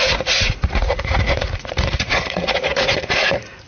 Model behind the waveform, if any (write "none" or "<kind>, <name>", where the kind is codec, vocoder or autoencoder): vocoder, Vocos